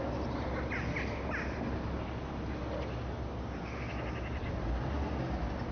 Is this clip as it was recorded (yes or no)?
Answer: yes